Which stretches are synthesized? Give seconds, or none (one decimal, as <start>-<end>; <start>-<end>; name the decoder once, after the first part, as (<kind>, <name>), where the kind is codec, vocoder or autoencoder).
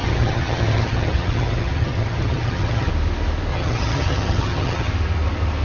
0.0-2.9 (vocoder, HiFi-GAN); 3.5-4.9